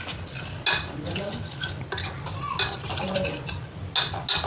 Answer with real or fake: real